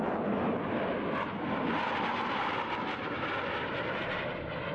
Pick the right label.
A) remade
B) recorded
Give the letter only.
B